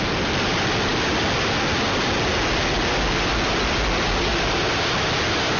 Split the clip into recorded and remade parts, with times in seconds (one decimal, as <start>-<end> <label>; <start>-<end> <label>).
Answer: 0.0-5.6 recorded

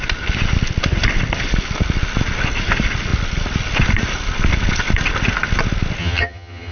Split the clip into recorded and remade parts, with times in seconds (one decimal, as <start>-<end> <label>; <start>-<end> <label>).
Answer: 0.0-6.0 recorded; 6.0-6.7 remade